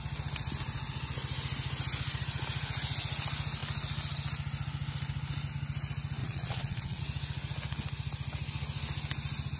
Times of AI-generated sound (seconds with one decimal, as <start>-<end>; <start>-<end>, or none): 6.2-7.0